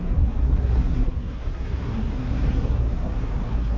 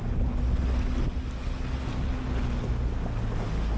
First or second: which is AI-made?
first